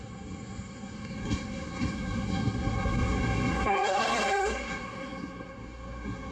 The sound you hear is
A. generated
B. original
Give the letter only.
A